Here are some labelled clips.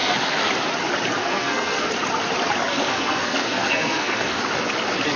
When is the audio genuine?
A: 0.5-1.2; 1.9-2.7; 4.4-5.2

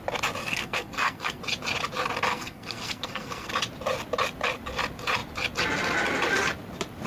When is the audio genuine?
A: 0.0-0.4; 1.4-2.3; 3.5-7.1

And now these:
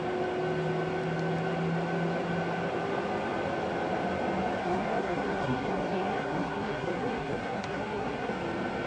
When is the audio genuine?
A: 0.0-4.6; 8.3-8.9